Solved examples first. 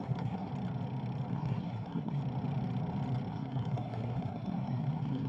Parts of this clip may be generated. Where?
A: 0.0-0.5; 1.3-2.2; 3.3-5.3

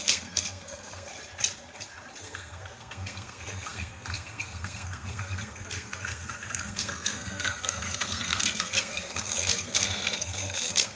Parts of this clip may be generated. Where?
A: 0.0-1.1; 2.2-11.0

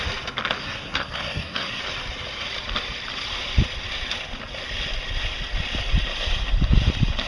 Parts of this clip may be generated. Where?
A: 0.6-1.8

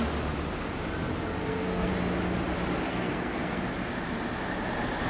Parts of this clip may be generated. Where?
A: 1.4-1.9; 2.9-3.6

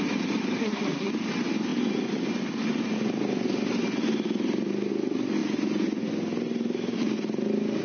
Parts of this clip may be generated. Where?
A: 0.6-1.1

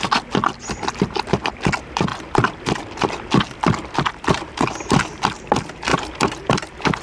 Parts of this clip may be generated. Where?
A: none